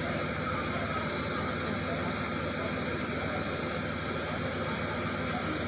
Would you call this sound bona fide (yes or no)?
yes